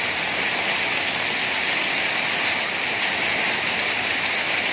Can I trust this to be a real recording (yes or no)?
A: yes